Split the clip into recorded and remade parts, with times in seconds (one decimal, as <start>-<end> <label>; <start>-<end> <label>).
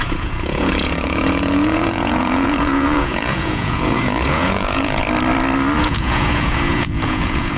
0.0-5.0 remade; 5.0-5.8 recorded; 5.8-7.6 remade